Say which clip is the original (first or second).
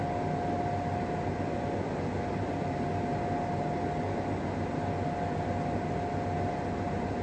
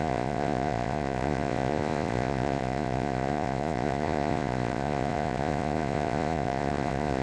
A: first